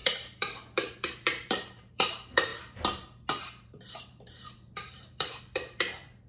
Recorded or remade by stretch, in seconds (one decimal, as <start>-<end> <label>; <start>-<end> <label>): 0.0-2.5 remade; 2.5-3.4 recorded; 3.4-6.3 remade